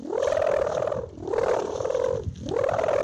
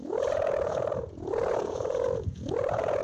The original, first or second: first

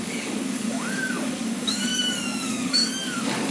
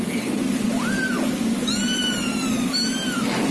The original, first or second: second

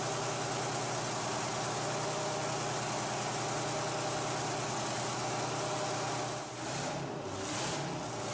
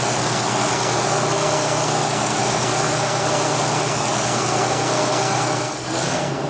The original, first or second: first